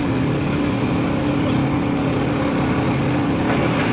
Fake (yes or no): no